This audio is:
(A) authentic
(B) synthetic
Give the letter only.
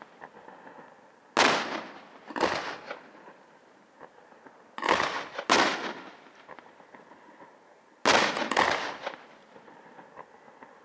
A